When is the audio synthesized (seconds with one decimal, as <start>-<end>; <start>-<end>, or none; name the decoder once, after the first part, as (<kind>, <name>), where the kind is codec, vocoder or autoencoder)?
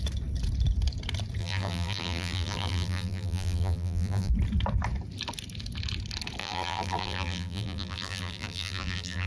1.4-4.3 (vocoder, BigVGAN v2); 6.4-9.3